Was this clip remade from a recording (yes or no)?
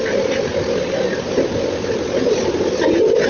no